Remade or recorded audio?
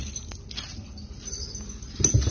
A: recorded